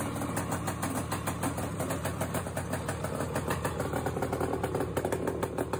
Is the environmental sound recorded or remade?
recorded